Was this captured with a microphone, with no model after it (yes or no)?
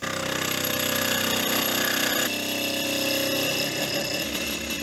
yes